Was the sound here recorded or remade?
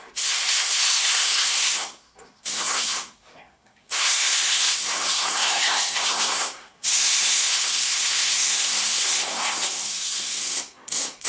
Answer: remade